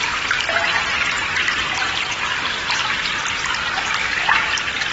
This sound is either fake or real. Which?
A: real